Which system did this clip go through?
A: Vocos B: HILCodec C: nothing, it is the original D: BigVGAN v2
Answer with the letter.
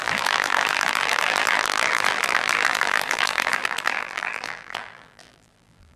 D